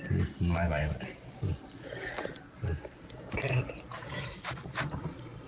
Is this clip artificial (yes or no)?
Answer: yes